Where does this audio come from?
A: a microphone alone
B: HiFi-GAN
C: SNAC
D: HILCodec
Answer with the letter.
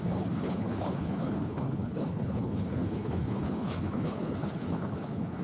D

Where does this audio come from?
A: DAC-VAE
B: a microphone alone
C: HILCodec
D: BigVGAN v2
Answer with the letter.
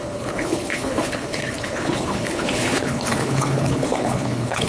C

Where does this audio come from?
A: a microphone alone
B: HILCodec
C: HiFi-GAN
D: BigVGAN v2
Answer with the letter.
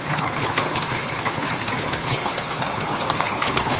B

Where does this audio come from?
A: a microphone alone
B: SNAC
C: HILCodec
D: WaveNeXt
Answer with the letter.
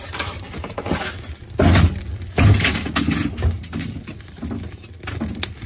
A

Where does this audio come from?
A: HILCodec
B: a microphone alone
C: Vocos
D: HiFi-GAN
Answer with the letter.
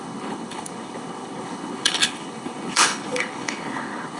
A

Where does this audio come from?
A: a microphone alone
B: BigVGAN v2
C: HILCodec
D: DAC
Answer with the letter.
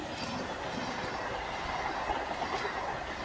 A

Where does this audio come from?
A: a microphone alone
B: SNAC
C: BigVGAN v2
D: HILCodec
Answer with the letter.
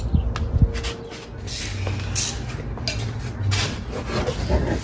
A